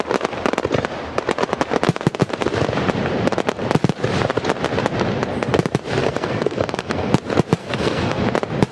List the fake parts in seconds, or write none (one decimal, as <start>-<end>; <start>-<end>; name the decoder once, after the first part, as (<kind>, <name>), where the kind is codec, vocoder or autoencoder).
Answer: 6.0-7.1 (codec, SNAC); 7.6-8.2